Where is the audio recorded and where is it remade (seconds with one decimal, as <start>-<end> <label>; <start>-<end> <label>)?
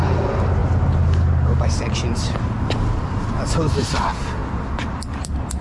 0.0-5.6 recorded